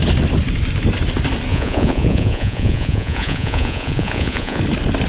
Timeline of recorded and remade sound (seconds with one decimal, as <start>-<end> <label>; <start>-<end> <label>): 0.0-1.5 recorded; 1.5-4.6 remade; 4.6-5.1 recorded